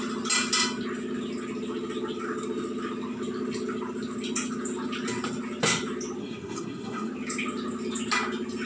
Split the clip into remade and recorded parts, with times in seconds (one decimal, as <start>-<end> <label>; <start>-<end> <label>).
0.0-6.2 recorded; 6.2-7.1 remade; 7.1-8.7 recorded

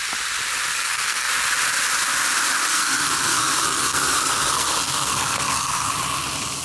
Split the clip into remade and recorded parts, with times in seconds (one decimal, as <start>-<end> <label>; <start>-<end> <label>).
0.0-0.7 recorded; 0.7-1.3 remade; 1.3-2.7 recorded; 2.7-5.9 remade; 5.9-6.6 recorded

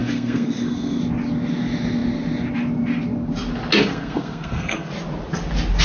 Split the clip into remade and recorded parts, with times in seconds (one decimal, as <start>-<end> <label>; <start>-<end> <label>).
0.0-1.0 remade; 1.0-3.8 recorded; 3.8-4.9 remade; 4.9-5.8 recorded

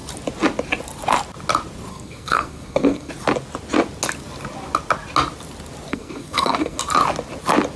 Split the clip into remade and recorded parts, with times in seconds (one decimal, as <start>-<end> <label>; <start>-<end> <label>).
0.0-1.9 recorded; 1.9-3.1 remade; 3.1-5.9 recorded; 5.9-6.8 remade; 6.8-7.8 recorded

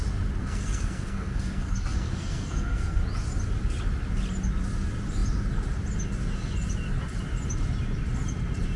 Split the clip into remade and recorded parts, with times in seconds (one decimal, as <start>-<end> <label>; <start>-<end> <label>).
0.0-0.4 recorded; 0.4-3.0 remade; 3.0-8.8 recorded

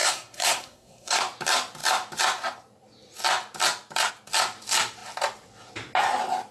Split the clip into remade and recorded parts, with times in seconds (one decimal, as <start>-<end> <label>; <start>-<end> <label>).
0.0-1.2 remade; 1.2-6.5 recorded

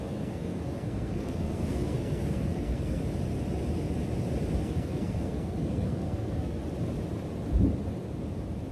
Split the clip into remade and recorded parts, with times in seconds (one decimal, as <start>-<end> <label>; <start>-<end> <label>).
0.0-3.0 remade; 3.0-4.6 recorded; 4.6-6.6 remade; 6.6-8.7 recorded

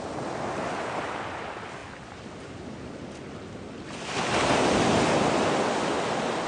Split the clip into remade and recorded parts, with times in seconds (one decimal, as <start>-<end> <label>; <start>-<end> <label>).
0.0-6.5 recorded